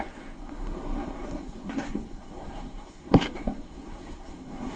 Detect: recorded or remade remade